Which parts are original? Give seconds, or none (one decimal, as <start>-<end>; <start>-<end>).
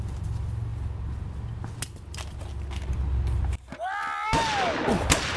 0.0-5.4